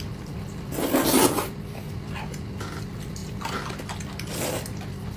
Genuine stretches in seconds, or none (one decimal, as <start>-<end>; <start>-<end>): 0.0-5.2